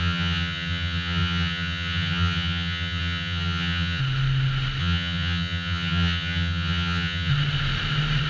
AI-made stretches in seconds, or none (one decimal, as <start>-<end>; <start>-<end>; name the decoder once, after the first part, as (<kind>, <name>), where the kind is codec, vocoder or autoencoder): 0.0-4.0 (vocoder, HiFi-GAN); 4.8-7.3